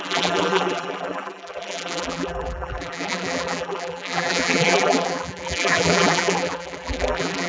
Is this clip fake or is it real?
fake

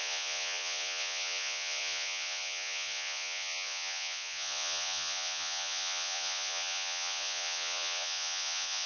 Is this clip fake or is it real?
fake